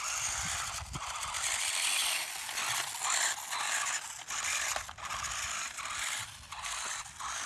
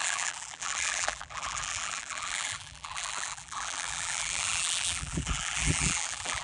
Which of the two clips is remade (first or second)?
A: second